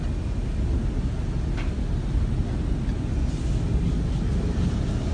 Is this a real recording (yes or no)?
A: yes